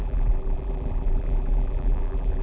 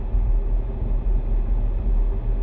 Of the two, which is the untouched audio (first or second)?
second